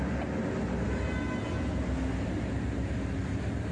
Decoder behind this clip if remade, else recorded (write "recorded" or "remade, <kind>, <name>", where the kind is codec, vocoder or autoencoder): recorded